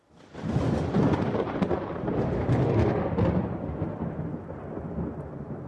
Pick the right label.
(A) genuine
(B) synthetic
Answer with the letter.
A